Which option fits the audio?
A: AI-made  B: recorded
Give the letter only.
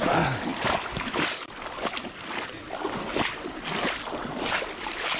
B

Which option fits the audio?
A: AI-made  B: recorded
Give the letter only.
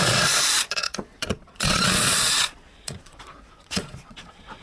A